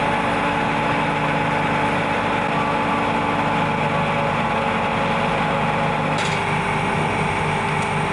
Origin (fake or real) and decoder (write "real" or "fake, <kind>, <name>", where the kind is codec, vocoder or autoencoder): real